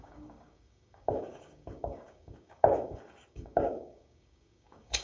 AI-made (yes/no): yes